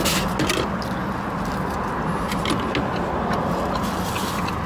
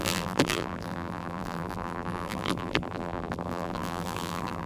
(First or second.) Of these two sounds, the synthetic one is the second